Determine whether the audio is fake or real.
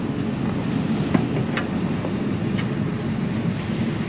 real